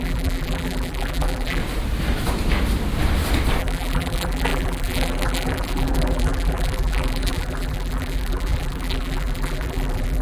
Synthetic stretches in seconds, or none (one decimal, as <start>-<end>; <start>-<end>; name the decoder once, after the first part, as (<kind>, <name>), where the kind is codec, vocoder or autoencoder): 0.0-1.6 (vocoder, BigVGAN v2); 3.6-10.2